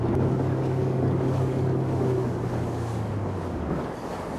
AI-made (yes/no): yes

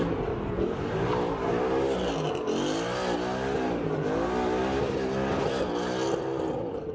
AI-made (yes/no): no